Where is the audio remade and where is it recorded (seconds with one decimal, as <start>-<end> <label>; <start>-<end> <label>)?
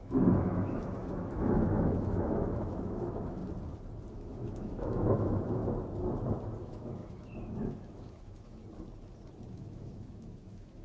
0.0-3.4 remade; 3.4-4.1 recorded; 4.1-5.6 remade; 5.6-6.6 recorded; 6.6-8.6 remade; 8.6-9.5 recorded; 9.5-10.8 remade